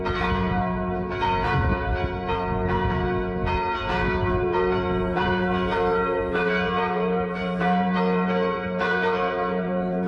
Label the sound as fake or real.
fake